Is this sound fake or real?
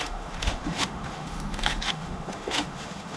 fake